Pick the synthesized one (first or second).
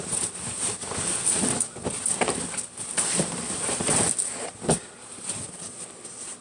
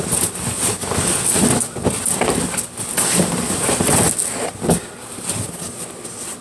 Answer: first